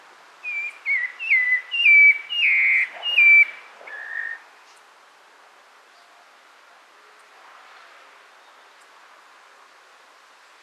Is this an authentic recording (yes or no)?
yes